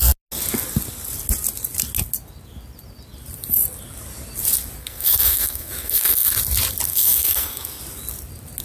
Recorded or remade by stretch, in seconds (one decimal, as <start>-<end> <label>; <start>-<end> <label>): 0.0-4.8 recorded; 4.8-6.3 remade; 6.3-6.9 recorded; 6.9-7.8 remade; 7.8-8.6 recorded